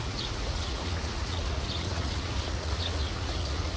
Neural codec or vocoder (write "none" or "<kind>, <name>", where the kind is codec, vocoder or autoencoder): vocoder, Vocos